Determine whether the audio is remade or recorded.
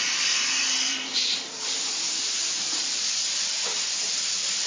remade